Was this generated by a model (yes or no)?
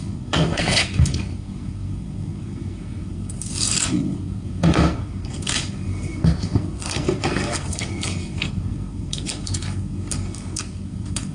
yes